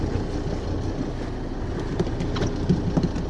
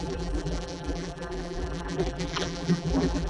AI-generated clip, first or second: second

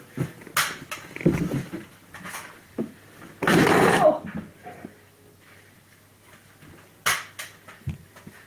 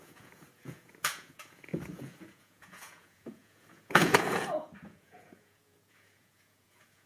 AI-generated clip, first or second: second